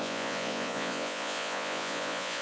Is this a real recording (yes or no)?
no